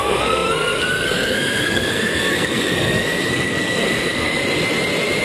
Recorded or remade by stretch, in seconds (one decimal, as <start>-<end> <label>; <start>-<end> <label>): 0.0-4.4 remade; 4.4-5.2 recorded